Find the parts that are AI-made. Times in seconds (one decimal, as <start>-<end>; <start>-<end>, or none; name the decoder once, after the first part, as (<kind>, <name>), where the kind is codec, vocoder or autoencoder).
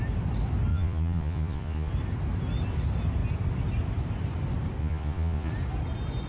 0.7-1.9 (vocoder, Vocos); 4.8-5.5